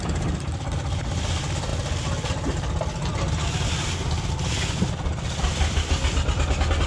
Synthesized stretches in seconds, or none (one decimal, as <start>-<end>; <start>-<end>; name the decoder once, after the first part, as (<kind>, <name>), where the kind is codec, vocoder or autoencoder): none